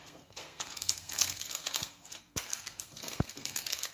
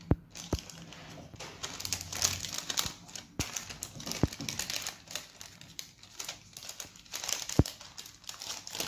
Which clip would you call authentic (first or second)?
second